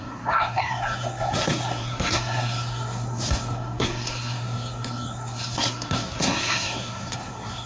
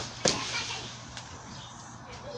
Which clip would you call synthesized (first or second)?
first